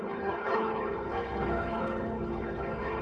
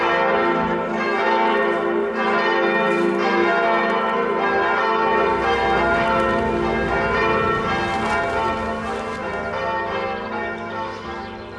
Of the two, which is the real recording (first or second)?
second